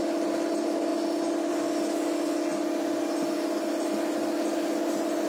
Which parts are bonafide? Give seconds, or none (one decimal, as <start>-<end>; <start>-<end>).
0.0-5.3